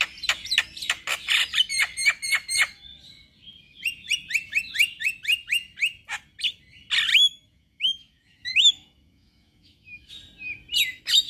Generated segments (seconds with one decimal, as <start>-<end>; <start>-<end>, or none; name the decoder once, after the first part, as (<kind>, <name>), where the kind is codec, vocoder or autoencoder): 7.1-10.1 (autoencoder, DAC-VAE)